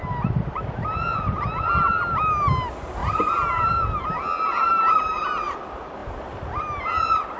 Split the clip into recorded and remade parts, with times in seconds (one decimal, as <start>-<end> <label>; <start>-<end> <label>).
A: 0.0-7.4 recorded